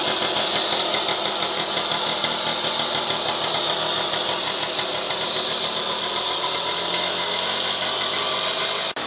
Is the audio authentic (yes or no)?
yes